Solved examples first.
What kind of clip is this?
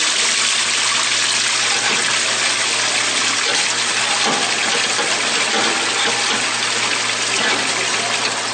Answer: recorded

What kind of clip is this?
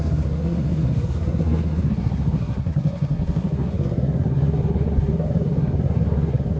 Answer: remade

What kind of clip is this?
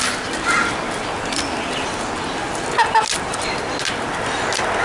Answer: recorded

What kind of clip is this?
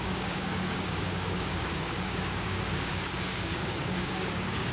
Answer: remade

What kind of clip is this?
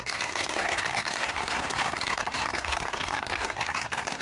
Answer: remade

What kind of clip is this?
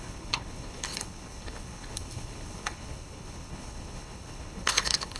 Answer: remade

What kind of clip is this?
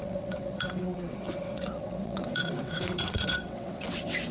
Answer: remade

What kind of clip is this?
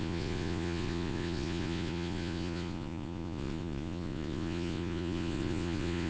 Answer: remade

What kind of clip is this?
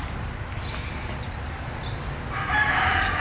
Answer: recorded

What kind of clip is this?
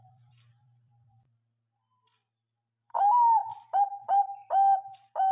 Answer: remade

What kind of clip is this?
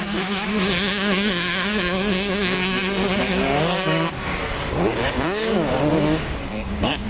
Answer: remade